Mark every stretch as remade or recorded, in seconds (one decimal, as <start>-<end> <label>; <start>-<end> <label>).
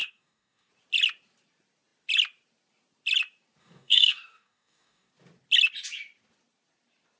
0.0-0.7 remade; 0.7-3.6 recorded; 3.6-5.1 remade; 5.1-7.2 recorded